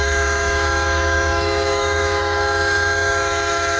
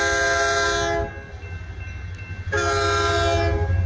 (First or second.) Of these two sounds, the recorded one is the second